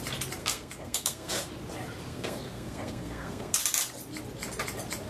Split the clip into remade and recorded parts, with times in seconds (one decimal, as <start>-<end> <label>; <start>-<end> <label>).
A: 0.0-0.4 recorded; 0.4-1.5 remade; 1.5-2.1 recorded; 2.1-3.6 remade; 3.6-5.1 recorded